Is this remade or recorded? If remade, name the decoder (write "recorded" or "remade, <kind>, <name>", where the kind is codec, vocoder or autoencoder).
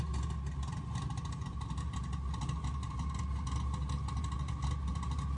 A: recorded